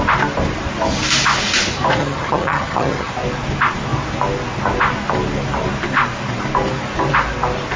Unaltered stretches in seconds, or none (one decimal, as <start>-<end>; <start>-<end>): 0.0-2.0; 3.1-7.8